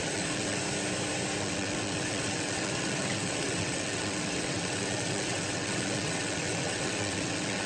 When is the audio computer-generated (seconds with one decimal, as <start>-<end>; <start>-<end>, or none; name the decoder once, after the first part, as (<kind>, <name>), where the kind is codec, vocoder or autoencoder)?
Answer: 0.0-0.6 (vocoder, WaveNeXt); 1.4-7.7